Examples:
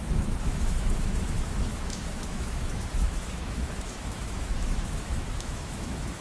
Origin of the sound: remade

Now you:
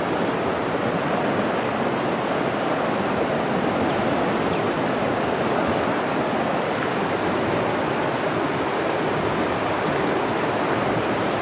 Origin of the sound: recorded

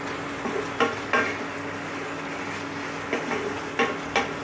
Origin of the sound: recorded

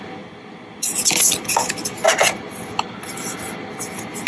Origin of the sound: recorded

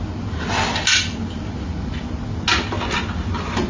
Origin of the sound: recorded